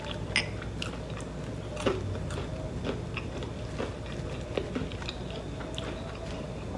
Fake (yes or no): no